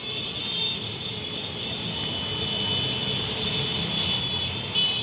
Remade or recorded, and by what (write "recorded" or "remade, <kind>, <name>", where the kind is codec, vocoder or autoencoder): recorded